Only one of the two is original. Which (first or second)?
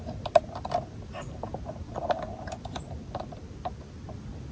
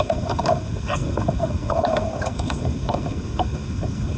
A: first